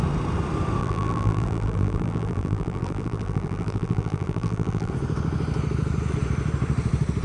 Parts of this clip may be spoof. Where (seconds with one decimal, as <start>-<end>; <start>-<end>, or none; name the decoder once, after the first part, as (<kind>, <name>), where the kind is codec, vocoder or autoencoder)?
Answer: 0.8-4.9 (vocoder, BigVGAN v2)